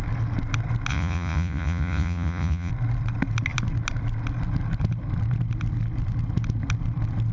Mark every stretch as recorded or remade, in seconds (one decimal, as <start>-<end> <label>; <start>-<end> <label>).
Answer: 0.0-0.9 recorded; 0.9-2.7 remade; 2.7-7.3 recorded

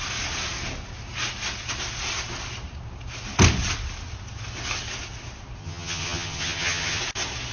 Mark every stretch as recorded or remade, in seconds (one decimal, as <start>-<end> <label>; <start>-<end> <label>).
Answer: 0.0-5.6 recorded; 5.6-7.0 remade; 7.0-7.5 recorded

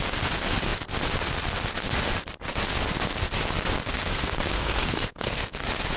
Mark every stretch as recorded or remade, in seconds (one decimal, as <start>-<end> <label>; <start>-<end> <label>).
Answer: 0.0-4.0 recorded; 4.0-5.6 remade; 5.6-6.0 recorded

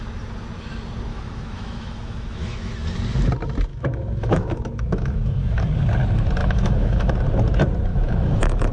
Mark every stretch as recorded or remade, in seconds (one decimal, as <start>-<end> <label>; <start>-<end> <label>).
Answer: 0.0-1.1 recorded; 1.1-2.7 remade; 2.7-3.7 recorded; 3.7-5.6 remade; 5.6-6.4 recorded; 6.4-7.1 remade; 7.1-7.9 recorded; 7.9-8.7 remade

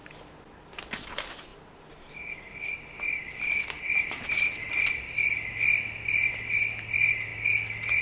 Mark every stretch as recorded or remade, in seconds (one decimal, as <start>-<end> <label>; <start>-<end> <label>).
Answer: 0.0-8.0 recorded

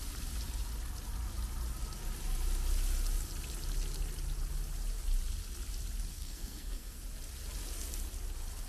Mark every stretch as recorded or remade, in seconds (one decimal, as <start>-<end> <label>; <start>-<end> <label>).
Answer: 0.0-6.1 recorded; 6.1-7.0 remade; 7.0-8.7 recorded

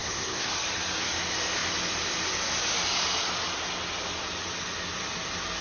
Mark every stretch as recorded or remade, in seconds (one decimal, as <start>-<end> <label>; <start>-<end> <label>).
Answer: 0.0-0.5 remade; 0.5-5.6 recorded